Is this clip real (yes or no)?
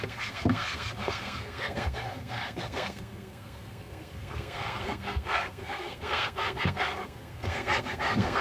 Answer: no